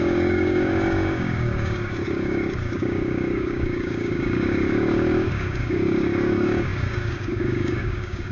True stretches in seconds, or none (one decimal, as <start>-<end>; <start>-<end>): none